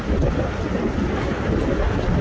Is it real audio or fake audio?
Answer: real